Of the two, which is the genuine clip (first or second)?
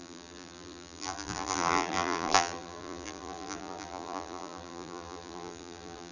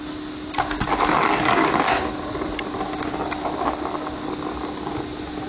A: second